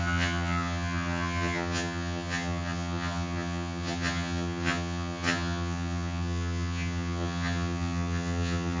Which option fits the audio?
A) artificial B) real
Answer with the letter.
A